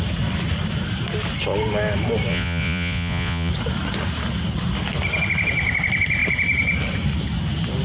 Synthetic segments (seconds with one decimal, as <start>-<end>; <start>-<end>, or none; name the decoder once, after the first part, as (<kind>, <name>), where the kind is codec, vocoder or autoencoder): 2.3-3.5 (vocoder, Vocos)